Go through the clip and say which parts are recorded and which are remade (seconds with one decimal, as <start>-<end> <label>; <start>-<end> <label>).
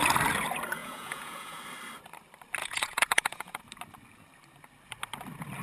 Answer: 0.0-0.8 recorded; 0.8-1.6 remade; 1.6-2.6 recorded; 2.6-3.6 remade; 3.6-5.6 recorded